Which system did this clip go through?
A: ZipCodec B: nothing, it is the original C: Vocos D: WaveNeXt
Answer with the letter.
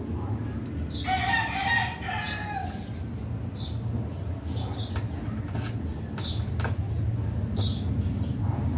B